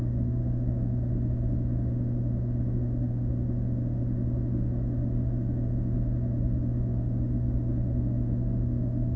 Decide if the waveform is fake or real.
fake